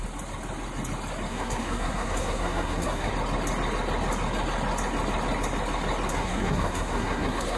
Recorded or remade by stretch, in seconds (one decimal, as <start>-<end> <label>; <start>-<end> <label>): 0.0-1.3 recorded; 1.3-3.1 remade; 3.1-6.1 recorded; 6.1-7.6 remade